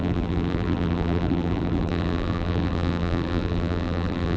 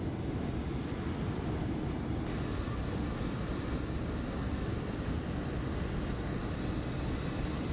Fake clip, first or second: first